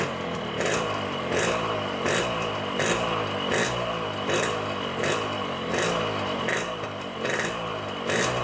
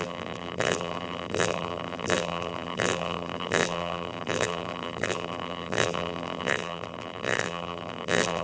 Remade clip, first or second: second